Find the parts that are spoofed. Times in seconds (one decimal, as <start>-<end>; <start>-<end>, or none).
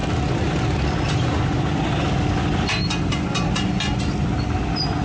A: none